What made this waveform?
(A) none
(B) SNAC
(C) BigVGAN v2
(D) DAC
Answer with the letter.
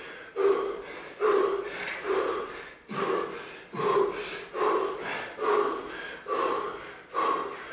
A